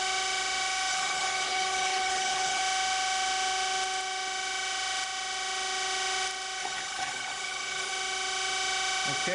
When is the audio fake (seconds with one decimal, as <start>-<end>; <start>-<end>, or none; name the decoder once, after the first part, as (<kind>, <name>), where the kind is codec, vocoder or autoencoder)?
0.9-2.6 (codec, HILCodec); 6.6-7.9